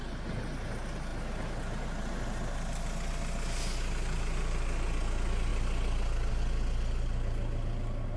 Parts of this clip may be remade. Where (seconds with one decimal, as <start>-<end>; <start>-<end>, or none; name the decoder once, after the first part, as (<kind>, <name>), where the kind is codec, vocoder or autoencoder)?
none